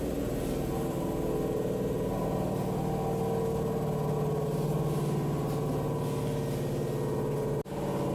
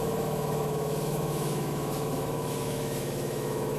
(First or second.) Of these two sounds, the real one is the first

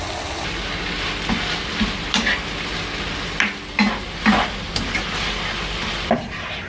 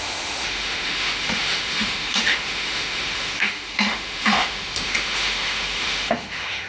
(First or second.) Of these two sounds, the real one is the first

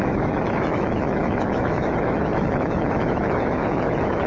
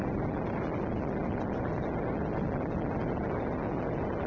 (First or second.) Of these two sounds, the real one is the second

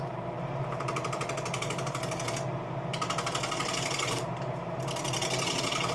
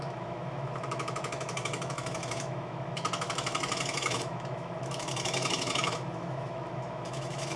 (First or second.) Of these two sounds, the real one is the first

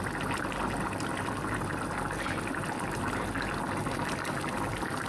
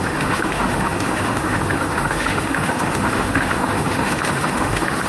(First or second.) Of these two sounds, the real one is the first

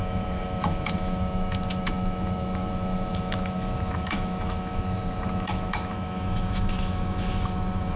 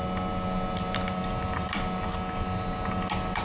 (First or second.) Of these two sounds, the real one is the second